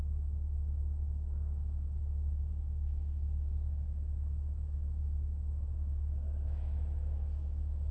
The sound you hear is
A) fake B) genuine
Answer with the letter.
A